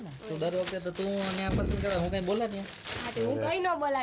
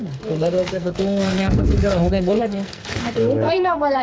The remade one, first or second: second